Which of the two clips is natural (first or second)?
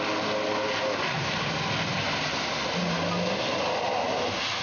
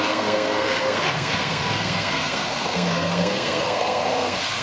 first